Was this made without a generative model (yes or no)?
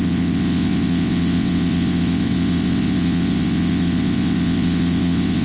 no